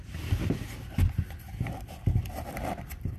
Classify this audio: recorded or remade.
recorded